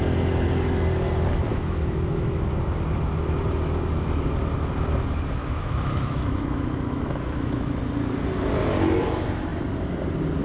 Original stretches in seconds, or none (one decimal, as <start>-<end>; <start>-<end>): 0.0-1.5; 2.5-5.4; 7.8-10.4